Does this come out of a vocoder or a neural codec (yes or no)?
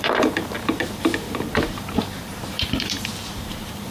yes